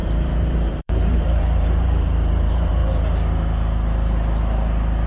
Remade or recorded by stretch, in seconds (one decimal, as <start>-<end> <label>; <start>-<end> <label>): 0.0-2.8 remade; 2.8-5.1 recorded